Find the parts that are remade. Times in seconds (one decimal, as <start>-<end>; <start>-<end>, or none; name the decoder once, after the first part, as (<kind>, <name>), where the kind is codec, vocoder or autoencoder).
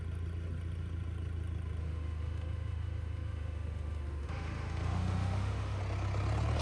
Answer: 1.8-5.8 (autoencoder, DAC-VAE)